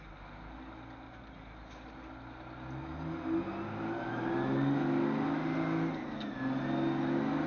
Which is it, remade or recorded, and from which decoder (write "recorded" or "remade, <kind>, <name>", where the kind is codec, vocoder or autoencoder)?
recorded